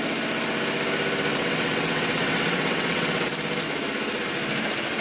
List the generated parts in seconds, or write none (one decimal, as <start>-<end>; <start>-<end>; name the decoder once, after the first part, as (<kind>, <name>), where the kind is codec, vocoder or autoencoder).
1.3-3.3 (vocoder, WaveNeXt)